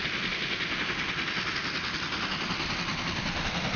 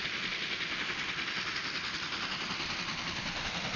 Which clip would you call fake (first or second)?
second